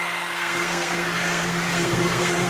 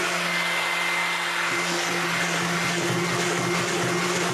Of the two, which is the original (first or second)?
second